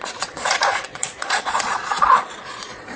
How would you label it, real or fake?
fake